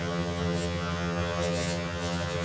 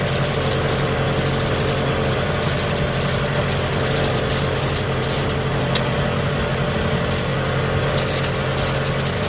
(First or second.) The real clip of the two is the second